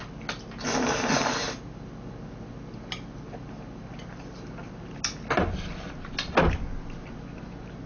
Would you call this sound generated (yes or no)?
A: no